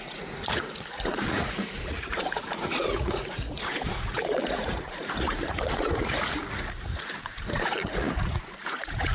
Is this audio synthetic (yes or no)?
yes